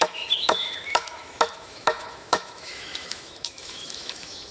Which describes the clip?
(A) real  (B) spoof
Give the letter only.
B